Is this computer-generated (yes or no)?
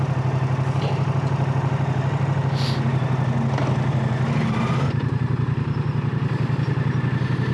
no